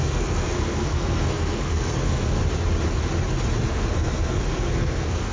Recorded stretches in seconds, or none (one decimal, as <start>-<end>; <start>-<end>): 2.4-3.7